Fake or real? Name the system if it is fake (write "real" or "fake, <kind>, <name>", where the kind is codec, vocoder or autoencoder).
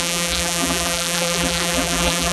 fake, vocoder, BigVGAN v2